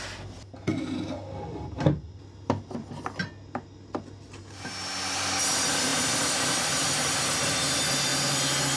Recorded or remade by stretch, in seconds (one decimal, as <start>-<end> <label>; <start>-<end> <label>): 0.0-8.8 recorded